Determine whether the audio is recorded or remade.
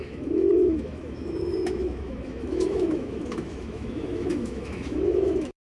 remade